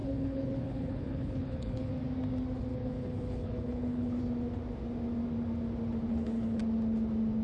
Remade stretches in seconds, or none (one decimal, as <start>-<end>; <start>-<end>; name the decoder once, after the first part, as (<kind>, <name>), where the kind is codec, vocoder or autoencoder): 0.0-1.9 (codec, HILCodec); 2.7-4.2; 6.1-6.6